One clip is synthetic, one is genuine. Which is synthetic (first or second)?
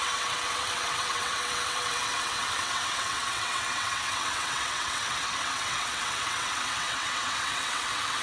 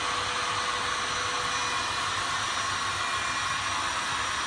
first